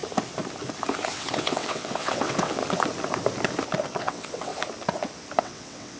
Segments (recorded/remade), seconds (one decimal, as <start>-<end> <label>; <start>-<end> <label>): 0.0-1.1 recorded; 1.1-2.6 remade; 2.6-3.9 recorded; 3.9-4.5 remade; 4.5-5.4 recorded; 5.4-6.0 remade